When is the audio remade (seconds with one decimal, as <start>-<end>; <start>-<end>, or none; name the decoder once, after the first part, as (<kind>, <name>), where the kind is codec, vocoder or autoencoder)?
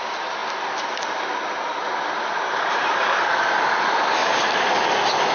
4.2-4.7 (vocoder, BigVGAN v2)